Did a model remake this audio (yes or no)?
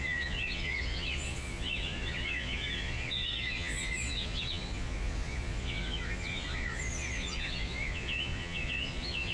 yes